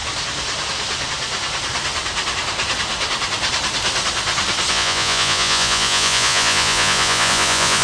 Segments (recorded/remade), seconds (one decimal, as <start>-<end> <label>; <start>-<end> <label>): 0.0-4.7 recorded; 4.7-7.8 remade